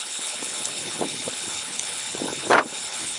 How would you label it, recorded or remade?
remade